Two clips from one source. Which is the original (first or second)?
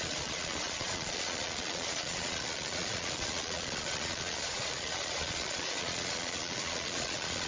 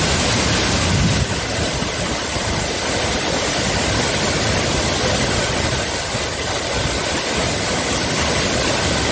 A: second